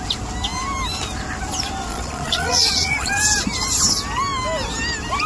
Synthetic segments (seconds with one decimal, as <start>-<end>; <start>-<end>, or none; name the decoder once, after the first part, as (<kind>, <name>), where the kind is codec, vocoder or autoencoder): 1.9-3.2 (vocoder, Vocos)